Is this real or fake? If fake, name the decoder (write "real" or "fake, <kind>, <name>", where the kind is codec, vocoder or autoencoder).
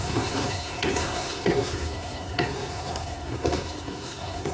fake, codec, SNAC